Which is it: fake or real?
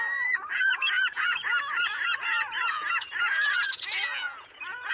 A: fake